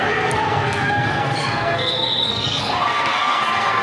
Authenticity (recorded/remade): remade